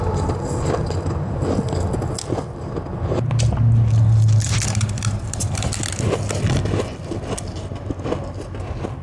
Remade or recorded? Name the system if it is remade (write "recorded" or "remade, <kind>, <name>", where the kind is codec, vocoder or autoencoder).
recorded